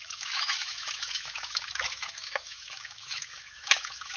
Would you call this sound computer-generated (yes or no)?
yes